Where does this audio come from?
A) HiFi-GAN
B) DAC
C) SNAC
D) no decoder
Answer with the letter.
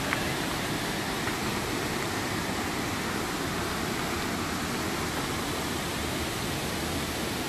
D